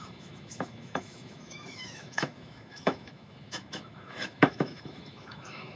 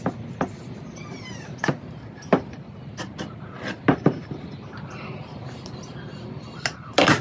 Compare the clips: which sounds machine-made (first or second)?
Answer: first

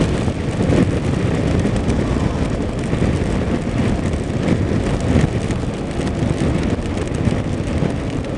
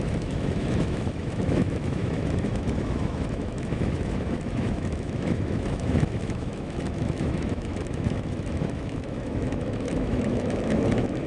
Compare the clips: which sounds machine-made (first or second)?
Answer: second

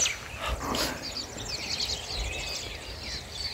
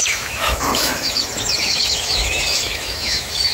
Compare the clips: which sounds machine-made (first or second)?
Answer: second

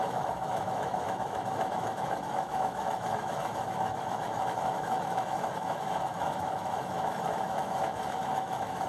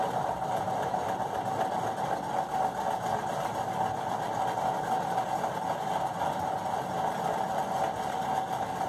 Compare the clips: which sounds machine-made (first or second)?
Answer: first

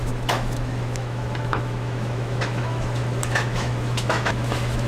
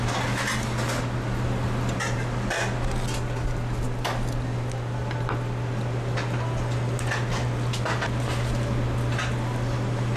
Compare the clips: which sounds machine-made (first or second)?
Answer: first